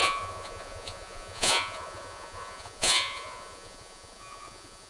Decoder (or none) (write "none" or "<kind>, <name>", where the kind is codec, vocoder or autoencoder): vocoder, Vocos